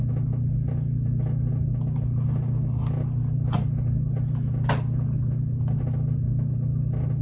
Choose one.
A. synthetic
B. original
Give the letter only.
B